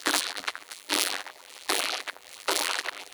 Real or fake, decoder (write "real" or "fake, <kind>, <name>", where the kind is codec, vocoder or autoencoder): fake, vocoder, BigVGAN v2